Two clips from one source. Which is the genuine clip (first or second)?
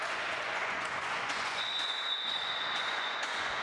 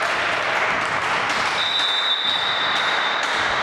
second